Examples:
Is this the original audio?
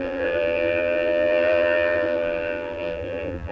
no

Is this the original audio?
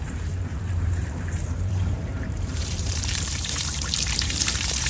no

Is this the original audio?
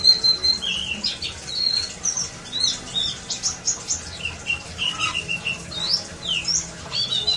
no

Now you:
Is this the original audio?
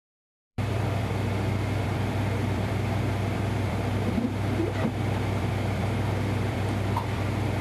no